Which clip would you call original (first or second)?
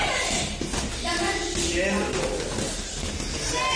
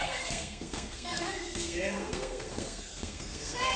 first